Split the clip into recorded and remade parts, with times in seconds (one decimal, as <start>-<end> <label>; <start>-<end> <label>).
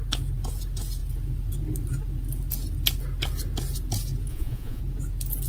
0.0-4.3 recorded; 4.3-4.8 remade; 4.8-5.5 recorded